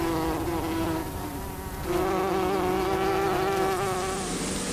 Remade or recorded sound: recorded